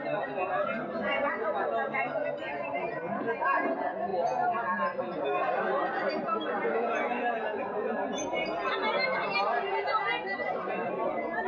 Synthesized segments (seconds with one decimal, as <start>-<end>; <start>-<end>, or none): 9.2-11.1